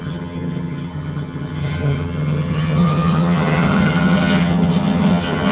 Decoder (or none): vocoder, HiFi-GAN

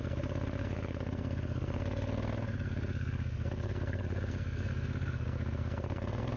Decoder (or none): codec, SNAC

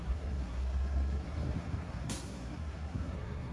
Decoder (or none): codec, SNAC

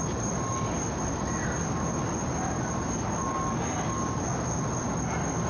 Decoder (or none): none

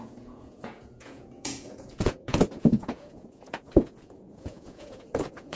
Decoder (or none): vocoder, Vocos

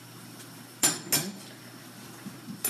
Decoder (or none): none